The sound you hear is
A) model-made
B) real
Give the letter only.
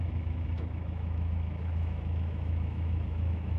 A